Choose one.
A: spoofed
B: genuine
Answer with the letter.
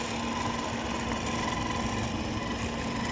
B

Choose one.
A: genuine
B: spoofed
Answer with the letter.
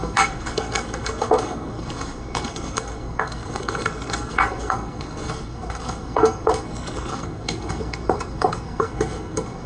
B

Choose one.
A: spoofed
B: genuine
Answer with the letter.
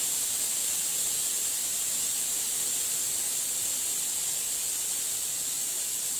B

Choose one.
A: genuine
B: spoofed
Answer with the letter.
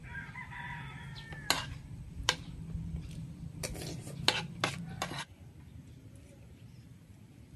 A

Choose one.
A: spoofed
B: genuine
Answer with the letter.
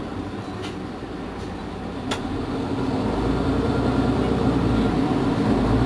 B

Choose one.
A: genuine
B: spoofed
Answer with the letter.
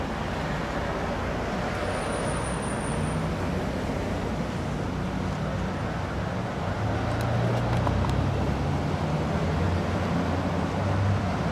A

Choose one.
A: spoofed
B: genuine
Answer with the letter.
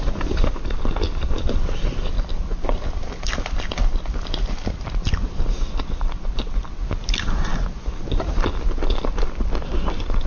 B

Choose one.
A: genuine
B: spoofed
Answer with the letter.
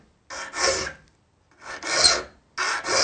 A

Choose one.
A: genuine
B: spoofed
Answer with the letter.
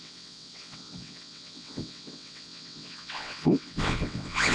B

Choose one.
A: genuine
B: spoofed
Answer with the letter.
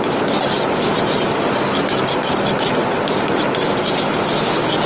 A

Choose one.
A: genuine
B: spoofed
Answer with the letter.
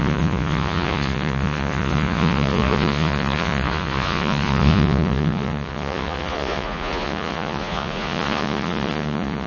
B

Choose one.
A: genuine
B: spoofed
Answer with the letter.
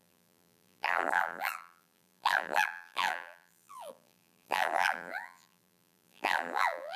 B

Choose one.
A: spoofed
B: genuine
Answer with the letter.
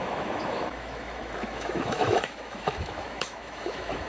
A